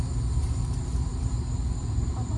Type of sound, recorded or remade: remade